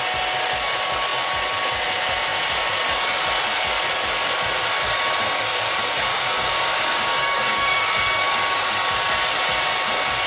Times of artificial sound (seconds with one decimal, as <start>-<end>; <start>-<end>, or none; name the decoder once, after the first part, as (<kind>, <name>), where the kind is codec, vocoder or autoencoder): 6.1-8.7 (codec, DAC)